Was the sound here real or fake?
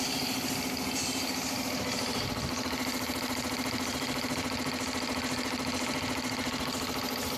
real